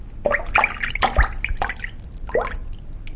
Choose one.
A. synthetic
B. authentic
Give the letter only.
B